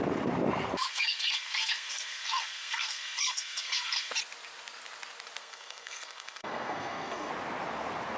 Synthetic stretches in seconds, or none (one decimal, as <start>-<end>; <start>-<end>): 0.9-4.1; 5.4-7.3